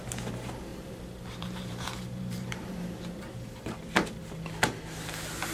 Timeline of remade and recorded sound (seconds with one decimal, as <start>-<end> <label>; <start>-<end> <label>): 0.0-0.7 recorded; 0.7-3.8 remade; 3.8-5.5 recorded